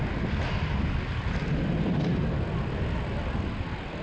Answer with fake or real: real